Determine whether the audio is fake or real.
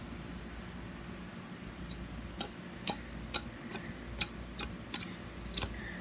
real